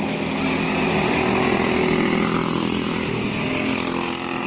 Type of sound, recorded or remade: recorded